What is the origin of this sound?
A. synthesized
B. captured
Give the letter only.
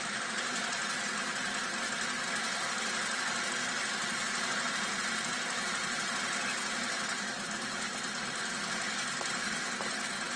B